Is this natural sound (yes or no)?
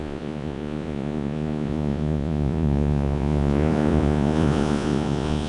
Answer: no